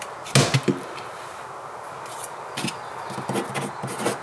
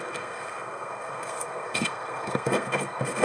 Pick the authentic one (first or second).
first